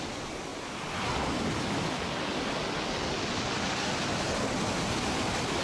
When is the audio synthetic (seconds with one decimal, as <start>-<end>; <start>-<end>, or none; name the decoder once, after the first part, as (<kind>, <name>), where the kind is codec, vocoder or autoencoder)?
none